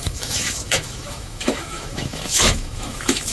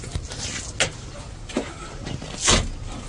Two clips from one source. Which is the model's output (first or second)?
first